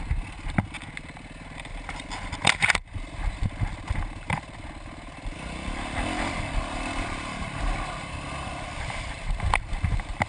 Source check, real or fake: fake